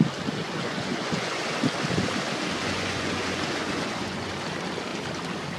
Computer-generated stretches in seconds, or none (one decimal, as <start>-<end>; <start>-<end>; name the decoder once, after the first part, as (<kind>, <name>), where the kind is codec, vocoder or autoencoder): 0.4-1.4 (vocoder, Vocos); 2.6-4.3